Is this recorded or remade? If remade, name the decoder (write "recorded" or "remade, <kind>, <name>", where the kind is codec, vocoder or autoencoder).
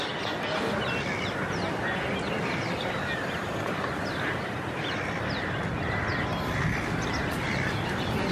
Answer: recorded